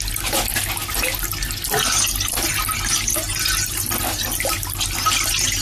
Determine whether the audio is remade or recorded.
recorded